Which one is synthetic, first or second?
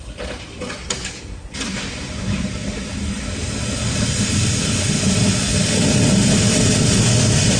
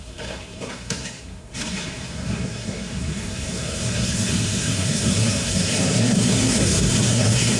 second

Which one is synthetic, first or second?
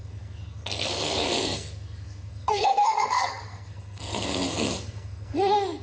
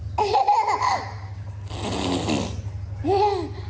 first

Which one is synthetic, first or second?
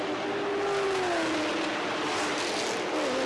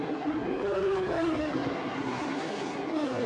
second